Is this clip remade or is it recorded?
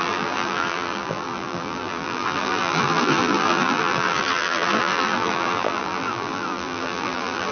remade